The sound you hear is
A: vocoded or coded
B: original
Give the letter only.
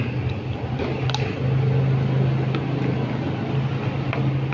B